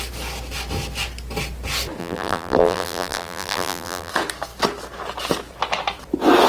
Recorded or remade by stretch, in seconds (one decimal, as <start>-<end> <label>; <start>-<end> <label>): 0.0-2.0 recorded; 2.0-4.1 remade; 4.1-6.5 recorded